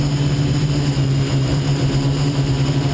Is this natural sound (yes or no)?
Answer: no